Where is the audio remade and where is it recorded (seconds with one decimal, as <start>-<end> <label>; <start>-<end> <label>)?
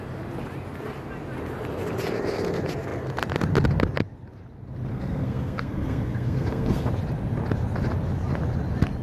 0.0-4.9 recorded; 4.9-6.9 remade; 6.9-9.0 recorded